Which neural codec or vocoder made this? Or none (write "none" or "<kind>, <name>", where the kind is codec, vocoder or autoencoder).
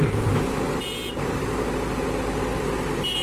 none